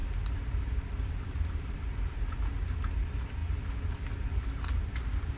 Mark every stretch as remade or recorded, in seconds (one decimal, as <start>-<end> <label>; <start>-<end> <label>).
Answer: 0.0-5.4 recorded